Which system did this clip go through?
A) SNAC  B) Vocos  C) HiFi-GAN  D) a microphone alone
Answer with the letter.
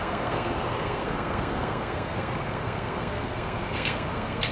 A